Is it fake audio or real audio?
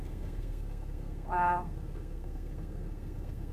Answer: fake